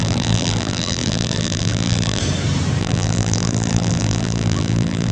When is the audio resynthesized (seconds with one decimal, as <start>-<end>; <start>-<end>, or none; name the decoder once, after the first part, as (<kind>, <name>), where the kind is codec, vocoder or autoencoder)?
0.0-2.2 (vocoder, BigVGAN v2); 2.8-5.1